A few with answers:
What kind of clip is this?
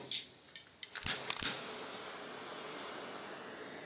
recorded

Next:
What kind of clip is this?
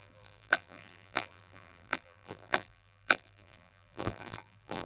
remade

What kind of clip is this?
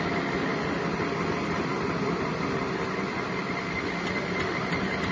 recorded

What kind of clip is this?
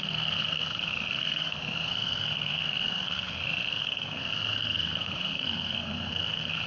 remade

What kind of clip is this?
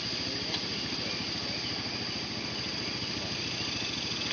recorded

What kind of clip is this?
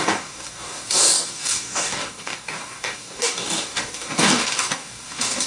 remade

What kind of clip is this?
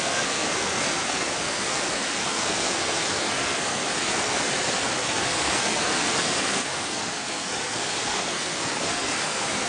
remade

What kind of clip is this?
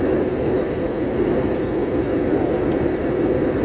recorded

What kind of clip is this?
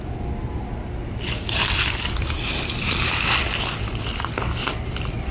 recorded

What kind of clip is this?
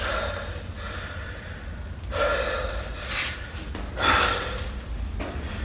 recorded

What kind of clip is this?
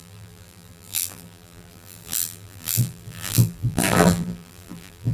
remade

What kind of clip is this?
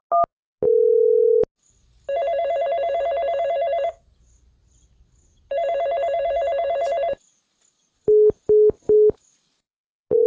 recorded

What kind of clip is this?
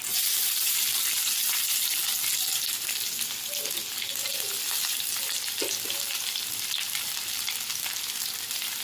recorded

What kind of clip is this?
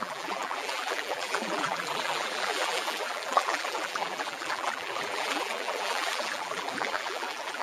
remade